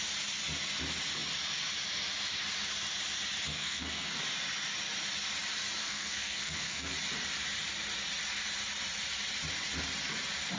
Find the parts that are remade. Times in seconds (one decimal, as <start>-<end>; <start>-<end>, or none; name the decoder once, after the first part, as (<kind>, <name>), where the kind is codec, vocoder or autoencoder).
3.5-4.2 (codec, SNAC); 5.8-6.9